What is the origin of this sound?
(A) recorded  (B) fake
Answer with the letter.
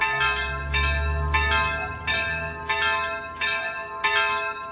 A